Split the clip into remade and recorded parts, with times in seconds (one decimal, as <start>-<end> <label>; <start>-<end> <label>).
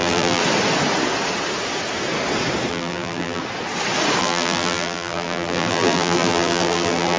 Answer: 0.0-0.4 remade; 0.4-2.7 recorded; 2.7-3.4 remade; 3.4-4.2 recorded; 4.2-7.2 remade